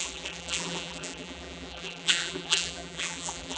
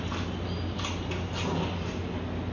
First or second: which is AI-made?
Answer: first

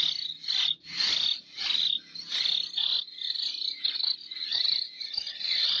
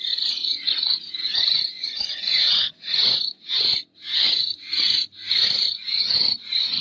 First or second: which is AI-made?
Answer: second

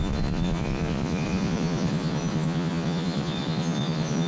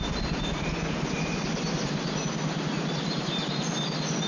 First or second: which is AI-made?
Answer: first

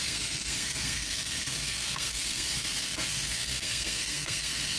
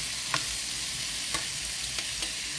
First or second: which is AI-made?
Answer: first